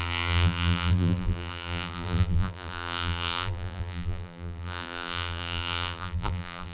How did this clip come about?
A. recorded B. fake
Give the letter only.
B